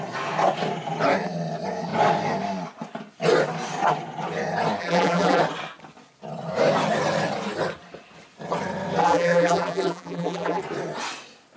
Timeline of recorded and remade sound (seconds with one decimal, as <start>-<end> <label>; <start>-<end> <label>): 0.0-4.8 recorded; 4.8-5.4 remade; 5.4-9.0 recorded; 9.0-10.6 remade; 10.6-11.6 recorded

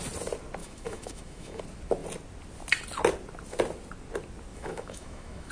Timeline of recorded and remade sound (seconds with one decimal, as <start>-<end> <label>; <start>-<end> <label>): 0.0-0.6 recorded; 0.6-1.6 remade; 1.6-4.5 recorded; 4.5-5.5 remade